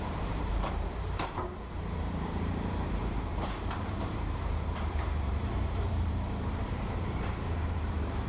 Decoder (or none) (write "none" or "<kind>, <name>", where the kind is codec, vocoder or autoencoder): vocoder, BigVGAN v2